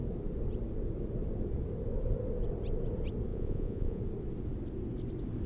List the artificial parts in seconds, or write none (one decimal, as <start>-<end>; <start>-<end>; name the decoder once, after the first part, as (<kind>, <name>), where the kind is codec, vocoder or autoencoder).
3.3-4.0 (vocoder, Vocos)